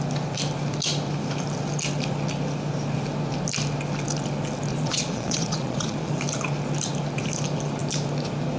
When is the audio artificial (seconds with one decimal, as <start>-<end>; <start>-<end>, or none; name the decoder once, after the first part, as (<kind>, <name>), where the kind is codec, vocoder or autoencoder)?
4.7-6.1 (vocoder, Vocos)